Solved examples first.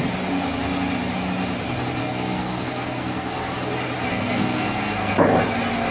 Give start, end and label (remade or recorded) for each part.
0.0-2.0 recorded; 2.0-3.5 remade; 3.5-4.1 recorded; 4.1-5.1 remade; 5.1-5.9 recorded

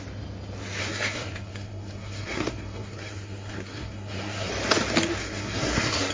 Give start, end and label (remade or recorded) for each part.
0.0-0.8 recorded; 0.8-4.5 remade; 4.5-5.2 recorded; 5.2-6.1 remade

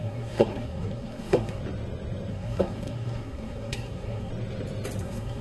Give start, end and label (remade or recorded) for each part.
0.0-1.6 remade; 1.6-2.3 recorded; 2.3-4.3 remade; 4.3-5.0 recorded; 5.0-5.4 remade

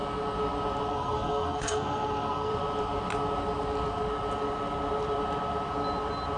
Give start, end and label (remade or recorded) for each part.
0.0-0.9 recorded; 0.9-2.5 remade; 2.5-6.4 recorded

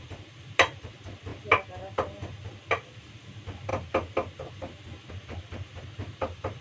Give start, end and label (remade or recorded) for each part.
0.0-6.6 recorded

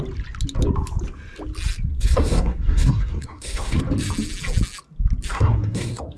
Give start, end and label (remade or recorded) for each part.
0.0-1.9 recorded; 1.9-3.8 remade; 3.8-5.3 recorded; 5.3-6.2 remade

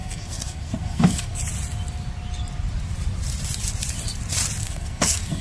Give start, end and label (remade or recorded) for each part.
0.0-1.4 remade; 1.4-4.6 recorded; 4.6-5.4 remade